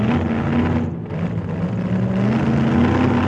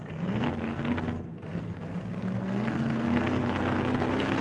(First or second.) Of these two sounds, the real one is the first